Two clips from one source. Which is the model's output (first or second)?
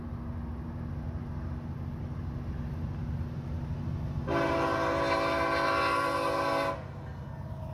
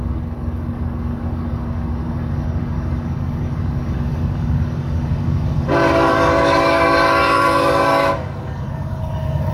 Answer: second